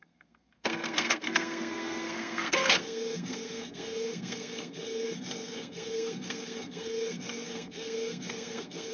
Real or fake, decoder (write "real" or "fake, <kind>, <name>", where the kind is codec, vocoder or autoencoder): fake, codec, SNAC